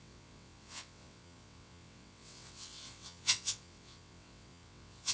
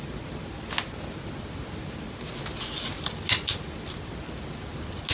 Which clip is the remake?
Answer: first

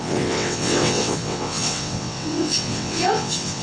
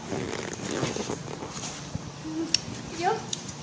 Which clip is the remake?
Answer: first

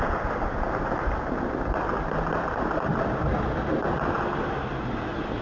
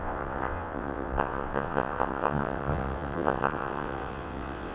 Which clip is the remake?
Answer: second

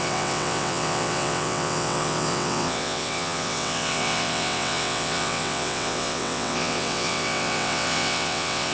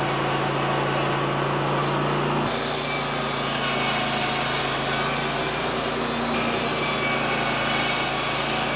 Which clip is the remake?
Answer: first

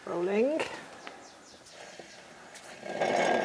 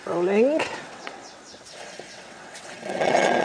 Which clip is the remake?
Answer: second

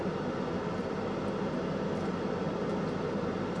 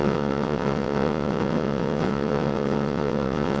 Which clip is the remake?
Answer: second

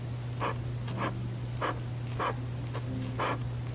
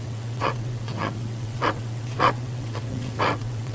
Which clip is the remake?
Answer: second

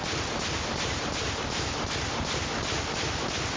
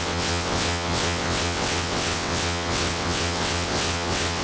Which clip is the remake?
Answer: second